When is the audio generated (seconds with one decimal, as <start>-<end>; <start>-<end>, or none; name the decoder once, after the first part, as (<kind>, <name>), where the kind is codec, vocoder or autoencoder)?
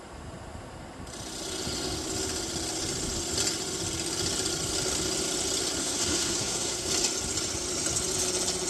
5.8-6.9 (codec, SNAC)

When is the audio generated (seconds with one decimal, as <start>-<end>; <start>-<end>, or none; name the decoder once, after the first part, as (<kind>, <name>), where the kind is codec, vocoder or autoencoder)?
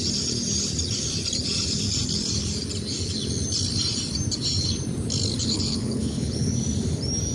5.4-6.5 (codec, HILCodec)